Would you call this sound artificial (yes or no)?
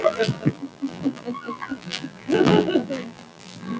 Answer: yes